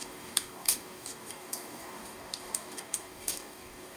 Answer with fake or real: fake